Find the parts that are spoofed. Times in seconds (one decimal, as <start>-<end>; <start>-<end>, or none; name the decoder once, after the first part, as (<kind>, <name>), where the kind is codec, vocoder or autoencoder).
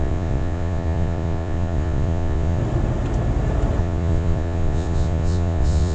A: 0.0-2.6 (vocoder, Vocos); 3.8-5.9